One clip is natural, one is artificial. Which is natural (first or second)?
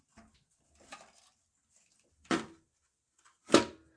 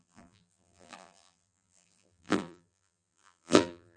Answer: first